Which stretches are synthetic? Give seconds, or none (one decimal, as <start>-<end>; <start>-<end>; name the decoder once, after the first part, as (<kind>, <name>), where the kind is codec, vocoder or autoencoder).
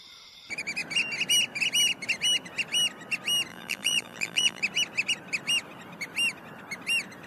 3.5-4.6 (vocoder, BigVGAN v2)